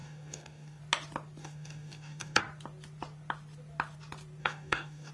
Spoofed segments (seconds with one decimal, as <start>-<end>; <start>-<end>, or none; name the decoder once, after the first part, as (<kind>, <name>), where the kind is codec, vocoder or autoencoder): 0.0-0.8 (codec, DAC); 1.4-2.4; 4.4-5.1